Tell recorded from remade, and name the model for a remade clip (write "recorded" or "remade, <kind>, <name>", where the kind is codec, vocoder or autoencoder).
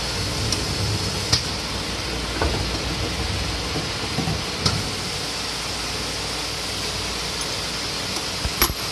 recorded